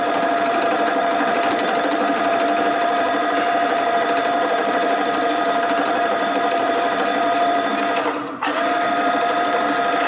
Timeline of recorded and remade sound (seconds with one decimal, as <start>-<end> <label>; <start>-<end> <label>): 0.0-7.7 remade; 7.7-8.3 recorded; 8.3-10.1 remade